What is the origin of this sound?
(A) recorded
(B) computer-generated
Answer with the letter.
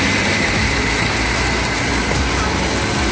A